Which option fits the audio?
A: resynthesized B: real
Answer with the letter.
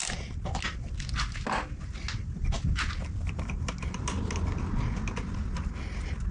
B